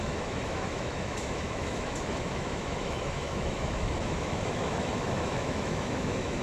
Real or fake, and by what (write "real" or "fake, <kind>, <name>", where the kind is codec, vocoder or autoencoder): fake, autoencoder, DAC-VAE